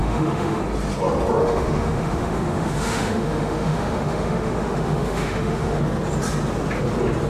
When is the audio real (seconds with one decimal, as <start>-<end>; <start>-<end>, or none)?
0.6-1.4; 5.8-7.3